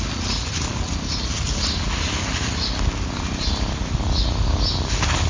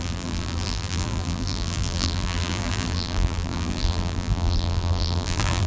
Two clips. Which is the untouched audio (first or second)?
first